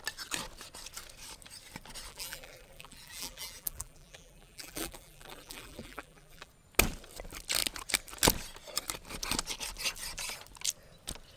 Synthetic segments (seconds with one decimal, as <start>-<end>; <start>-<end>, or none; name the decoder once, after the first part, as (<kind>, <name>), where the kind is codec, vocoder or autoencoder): 2.1-6.5 (vocoder, BigVGAN v2)